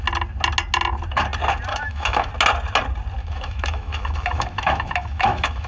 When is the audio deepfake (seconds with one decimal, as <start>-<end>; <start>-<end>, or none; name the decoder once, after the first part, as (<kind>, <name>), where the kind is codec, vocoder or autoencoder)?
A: 1.7-2.3 (autoencoder, DAC-VAE); 3.2-5.7